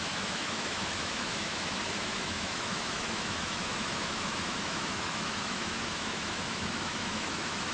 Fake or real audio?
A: fake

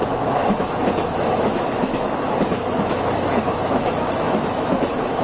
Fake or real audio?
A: fake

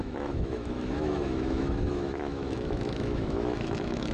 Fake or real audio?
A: fake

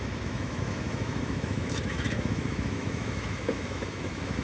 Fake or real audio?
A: fake